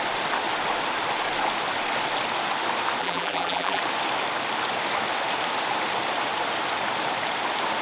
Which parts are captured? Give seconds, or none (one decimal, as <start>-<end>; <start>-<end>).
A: 0.0-3.0; 3.8-7.8